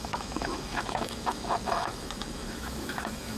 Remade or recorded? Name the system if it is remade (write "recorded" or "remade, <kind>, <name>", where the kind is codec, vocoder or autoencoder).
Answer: remade, autoencoder, DAC-VAE